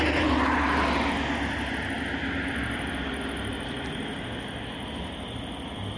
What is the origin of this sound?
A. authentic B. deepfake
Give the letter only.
A